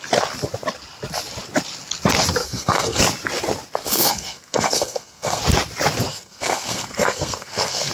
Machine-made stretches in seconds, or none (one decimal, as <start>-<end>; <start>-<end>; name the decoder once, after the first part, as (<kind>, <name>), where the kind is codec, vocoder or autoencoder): 2.4-3.0 (codec, SNAC); 3.8-5.4; 6.1-7.9

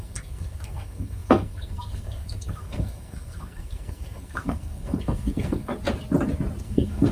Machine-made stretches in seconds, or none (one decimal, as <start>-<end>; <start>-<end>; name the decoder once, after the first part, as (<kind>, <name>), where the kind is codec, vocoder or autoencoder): 0.0-5.7 (codec, SNAC); 6.6-7.1

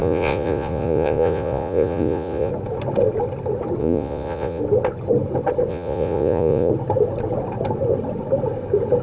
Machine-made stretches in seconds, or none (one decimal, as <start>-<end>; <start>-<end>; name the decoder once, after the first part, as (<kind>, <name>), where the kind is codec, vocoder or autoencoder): 0.0-2.5 (vocoder, Vocos); 3.8-4.6; 5.7-6.7

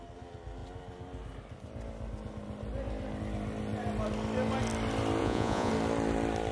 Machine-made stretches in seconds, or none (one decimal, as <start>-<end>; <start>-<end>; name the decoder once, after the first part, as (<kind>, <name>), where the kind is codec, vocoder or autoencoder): 5.2-5.7 (vocoder, Vocos)

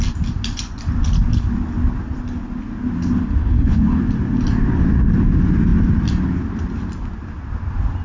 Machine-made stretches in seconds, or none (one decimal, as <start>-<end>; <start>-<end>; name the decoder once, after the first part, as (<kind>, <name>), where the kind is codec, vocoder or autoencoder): 3.4-4.0 (codec, HILCodec)

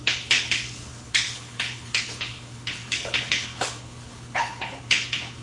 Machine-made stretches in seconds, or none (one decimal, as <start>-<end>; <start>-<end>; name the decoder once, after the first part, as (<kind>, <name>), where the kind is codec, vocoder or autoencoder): 0.0-5.4 (codec, HILCodec)

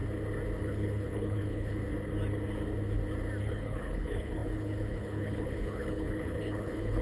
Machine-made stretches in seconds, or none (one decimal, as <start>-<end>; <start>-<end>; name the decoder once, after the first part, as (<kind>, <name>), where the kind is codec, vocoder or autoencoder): 0.6-1.8 (codec, HILCodec); 3.4-7.0

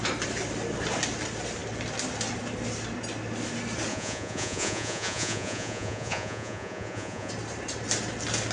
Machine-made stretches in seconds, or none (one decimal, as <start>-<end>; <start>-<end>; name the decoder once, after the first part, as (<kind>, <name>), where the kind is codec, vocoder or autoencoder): 3.9-7.3 (vocoder, Vocos)